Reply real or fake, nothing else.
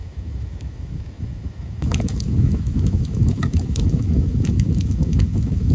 fake